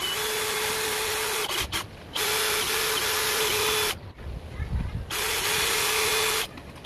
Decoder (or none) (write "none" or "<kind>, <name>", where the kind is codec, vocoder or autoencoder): none